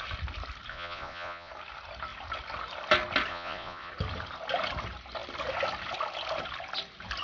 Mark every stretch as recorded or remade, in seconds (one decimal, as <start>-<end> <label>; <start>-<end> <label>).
0.0-0.7 recorded; 0.7-1.5 remade; 1.5-3.3 recorded; 3.3-3.9 remade; 3.9-7.2 recorded

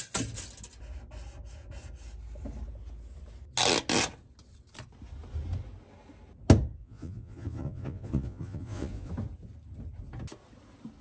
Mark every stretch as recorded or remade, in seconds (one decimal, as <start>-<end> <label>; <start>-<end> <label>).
0.0-6.8 recorded; 6.8-9.1 remade; 9.1-11.0 recorded

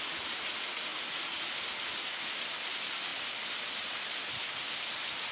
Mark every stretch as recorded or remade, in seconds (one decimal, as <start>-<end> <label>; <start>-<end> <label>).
0.0-5.3 recorded

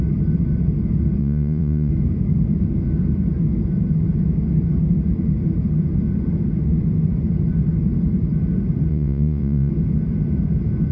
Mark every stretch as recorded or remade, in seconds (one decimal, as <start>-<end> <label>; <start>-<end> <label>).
0.0-1.2 recorded; 1.2-1.9 remade; 1.9-8.9 recorded; 8.9-9.7 remade; 9.7-10.9 recorded

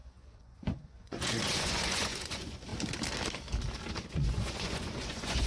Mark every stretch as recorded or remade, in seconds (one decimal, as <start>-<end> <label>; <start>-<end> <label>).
0.0-2.7 remade; 2.7-4.1 recorded; 4.1-5.5 remade

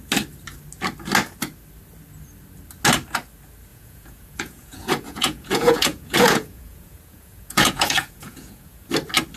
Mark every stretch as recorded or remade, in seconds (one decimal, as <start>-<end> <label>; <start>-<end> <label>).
0.0-3.7 recorded; 3.7-8.9 remade; 8.9-9.4 recorded

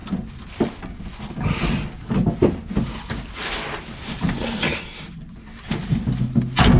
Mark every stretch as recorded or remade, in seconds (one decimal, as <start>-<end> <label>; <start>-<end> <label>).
0.0-6.8 recorded

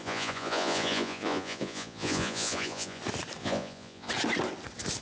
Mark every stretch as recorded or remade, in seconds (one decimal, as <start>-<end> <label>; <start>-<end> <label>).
0.0-3.0 remade; 3.0-3.4 recorded; 3.4-4.1 remade; 4.1-5.0 recorded